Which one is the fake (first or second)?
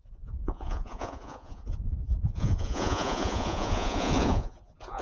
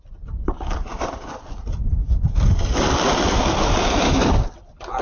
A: first